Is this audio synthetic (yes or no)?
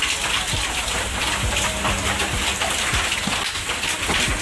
no